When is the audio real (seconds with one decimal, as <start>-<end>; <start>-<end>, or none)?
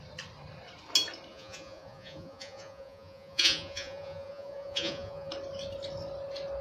0.0-1.3; 5.3-6.6